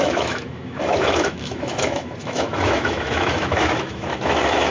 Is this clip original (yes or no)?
no